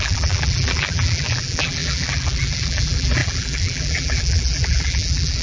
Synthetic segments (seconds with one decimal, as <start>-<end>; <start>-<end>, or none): 0.0-5.4